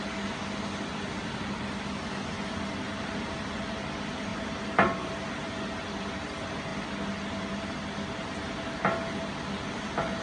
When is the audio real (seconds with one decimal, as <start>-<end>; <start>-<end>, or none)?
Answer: 0.0-10.2